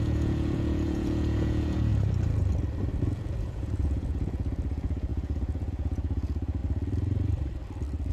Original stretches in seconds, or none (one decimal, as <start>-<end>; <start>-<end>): 1.9-3.0; 6.6-8.1